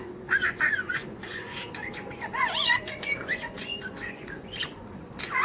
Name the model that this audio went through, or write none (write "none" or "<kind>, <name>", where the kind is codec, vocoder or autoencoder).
vocoder, Vocos